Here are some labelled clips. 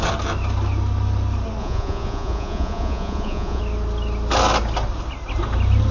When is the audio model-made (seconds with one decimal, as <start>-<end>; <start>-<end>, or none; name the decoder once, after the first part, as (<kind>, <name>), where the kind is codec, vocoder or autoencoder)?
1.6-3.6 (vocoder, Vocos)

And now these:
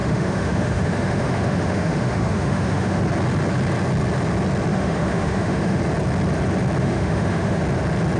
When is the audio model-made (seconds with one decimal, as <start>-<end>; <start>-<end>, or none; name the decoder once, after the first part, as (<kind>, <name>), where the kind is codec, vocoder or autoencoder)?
0.0-3.0 (autoencoder, DAC-VAE); 4.7-5.8; 6.8-7.6

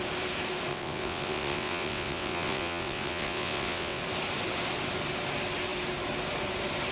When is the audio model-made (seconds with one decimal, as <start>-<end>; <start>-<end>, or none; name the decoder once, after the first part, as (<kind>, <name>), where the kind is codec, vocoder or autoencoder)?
0.7-4.0 (vocoder, WaveNeXt)